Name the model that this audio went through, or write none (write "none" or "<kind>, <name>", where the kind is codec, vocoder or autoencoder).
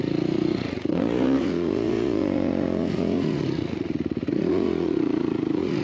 vocoder, Vocos